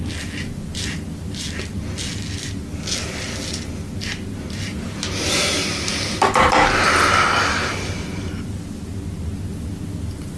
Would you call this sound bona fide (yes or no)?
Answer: yes